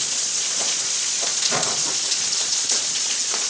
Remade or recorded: remade